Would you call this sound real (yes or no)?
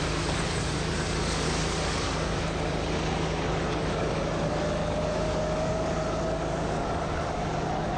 no